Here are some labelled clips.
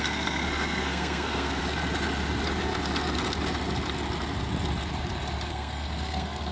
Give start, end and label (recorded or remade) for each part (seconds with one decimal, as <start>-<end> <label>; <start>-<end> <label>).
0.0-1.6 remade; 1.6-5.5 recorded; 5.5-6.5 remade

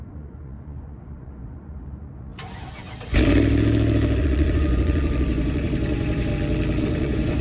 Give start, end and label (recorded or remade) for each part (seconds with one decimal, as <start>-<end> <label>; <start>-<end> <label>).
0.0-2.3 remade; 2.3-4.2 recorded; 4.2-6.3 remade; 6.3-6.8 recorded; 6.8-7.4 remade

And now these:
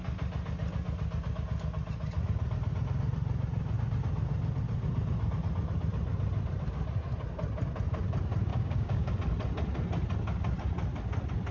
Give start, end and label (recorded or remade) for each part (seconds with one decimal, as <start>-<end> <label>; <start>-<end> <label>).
0.0-8.5 recorded; 8.5-9.1 remade; 9.1-11.5 recorded

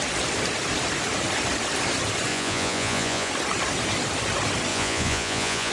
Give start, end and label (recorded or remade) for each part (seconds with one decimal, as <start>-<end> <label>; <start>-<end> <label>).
0.0-2.3 recorded; 2.3-3.3 remade; 3.3-4.7 recorded; 4.7-5.7 remade